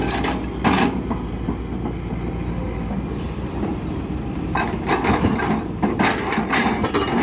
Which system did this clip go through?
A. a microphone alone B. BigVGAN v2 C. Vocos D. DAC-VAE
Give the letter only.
A